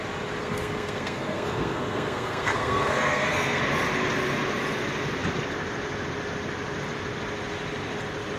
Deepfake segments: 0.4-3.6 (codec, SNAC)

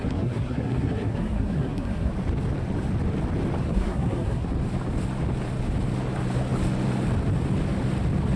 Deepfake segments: 0.0-2.1 (codec, SNAC); 3.6-4.5